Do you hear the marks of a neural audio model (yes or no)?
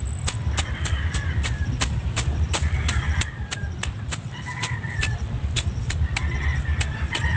no